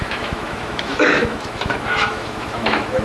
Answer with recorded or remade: remade